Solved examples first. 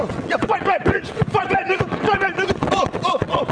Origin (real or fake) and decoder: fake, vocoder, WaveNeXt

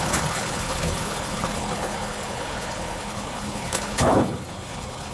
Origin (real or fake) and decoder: fake, codec, HILCodec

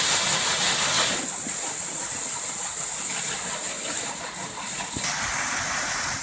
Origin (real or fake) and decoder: real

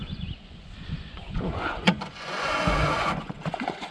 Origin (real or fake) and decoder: fake, vocoder, Vocos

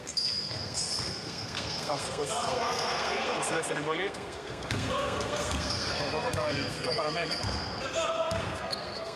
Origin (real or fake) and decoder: fake, codec, SNAC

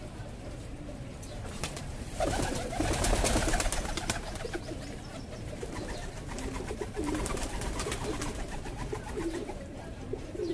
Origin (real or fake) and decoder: fake, vocoder, BigVGAN v2